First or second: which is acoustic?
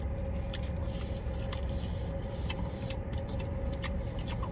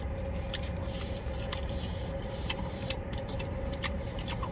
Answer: first